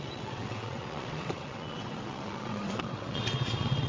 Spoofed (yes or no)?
yes